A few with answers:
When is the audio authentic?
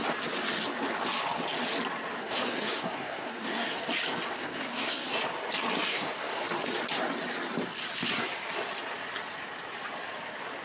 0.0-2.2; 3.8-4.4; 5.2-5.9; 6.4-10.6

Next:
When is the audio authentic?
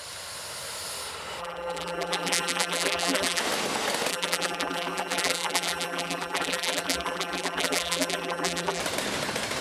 0.0-1.4; 3.4-4.1; 8.8-9.6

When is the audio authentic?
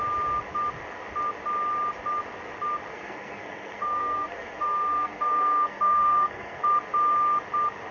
0.0-2.9; 6.6-7.9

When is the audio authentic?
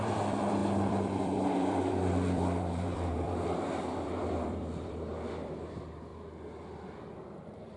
6.1-6.9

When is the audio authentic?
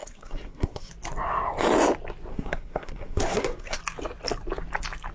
0.9-2.3; 3.8-5.1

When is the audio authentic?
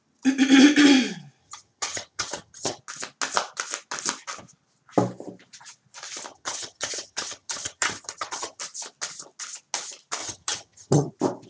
0.0-1.4; 2.8-6.3; 8.6-10.2; 11.1-11.5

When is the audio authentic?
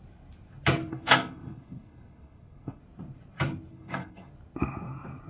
0.0-0.9; 2.8-3.7; 4.3-5.3